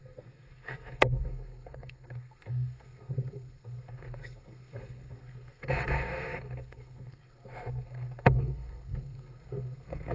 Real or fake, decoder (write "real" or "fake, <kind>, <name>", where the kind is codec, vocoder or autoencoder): fake, codec, SNAC